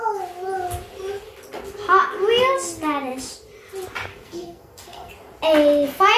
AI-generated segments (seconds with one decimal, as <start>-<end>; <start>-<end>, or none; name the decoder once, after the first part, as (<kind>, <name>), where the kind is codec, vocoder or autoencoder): 4.1-5.1 (codec, SNAC)